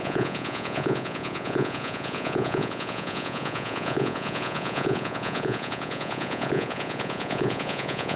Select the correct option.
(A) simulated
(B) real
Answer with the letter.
A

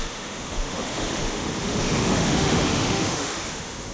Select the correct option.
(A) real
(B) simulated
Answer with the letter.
B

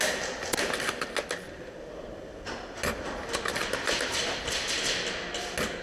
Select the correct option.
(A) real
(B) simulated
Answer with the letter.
A